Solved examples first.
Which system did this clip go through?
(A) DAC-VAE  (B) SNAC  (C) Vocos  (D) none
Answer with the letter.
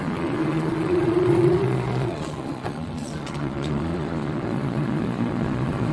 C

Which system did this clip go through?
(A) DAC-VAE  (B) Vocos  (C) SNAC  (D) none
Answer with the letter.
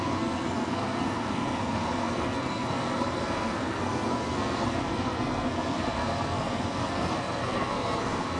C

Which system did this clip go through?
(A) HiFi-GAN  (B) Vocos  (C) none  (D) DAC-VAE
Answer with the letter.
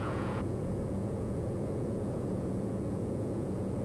B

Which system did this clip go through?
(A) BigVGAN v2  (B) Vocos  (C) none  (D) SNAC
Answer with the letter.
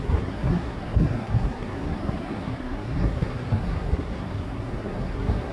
D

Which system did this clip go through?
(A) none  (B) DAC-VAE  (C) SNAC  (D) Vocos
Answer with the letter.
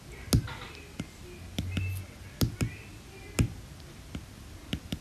A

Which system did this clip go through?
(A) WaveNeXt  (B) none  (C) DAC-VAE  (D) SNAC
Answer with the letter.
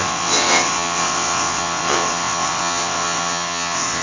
A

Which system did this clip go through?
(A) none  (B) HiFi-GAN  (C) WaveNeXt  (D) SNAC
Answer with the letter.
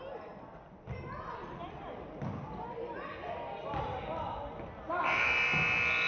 A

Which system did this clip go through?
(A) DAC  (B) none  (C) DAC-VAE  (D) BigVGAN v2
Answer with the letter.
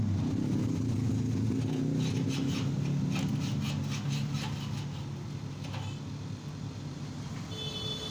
B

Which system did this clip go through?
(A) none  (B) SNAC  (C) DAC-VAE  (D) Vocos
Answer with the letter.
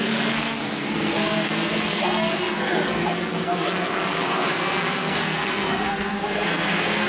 B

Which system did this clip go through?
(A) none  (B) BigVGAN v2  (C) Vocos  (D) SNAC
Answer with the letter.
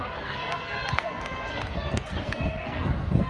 D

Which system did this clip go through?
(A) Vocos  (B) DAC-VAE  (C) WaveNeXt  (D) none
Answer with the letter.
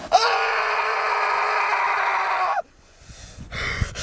A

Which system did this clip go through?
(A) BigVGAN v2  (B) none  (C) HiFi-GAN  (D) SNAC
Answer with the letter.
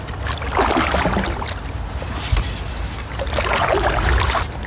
B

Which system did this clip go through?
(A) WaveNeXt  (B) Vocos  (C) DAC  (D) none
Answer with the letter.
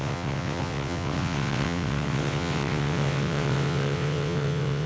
A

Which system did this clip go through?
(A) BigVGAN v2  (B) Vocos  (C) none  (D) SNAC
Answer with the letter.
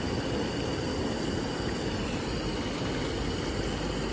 C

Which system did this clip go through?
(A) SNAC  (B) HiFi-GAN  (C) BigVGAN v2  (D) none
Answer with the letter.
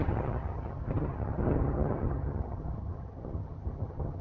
B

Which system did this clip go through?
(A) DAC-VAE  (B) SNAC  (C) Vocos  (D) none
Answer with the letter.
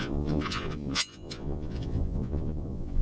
C